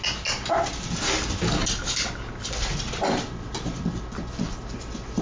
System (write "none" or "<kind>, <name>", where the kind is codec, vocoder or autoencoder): none